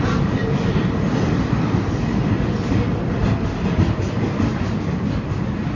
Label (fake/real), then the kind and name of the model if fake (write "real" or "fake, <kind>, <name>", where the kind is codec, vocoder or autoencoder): real